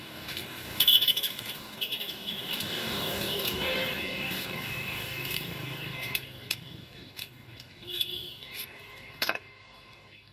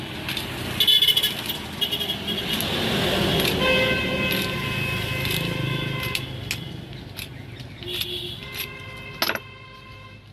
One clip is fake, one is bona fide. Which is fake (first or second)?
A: first